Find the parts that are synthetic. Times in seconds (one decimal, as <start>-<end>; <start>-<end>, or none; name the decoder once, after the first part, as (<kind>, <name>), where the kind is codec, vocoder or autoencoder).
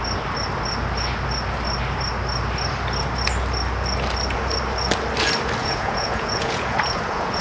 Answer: 5.6-7.4 (vocoder, Vocos)